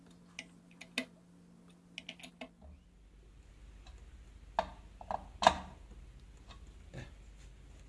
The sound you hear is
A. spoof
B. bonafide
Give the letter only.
B